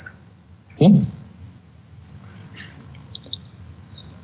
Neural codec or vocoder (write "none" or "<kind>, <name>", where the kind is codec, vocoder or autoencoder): none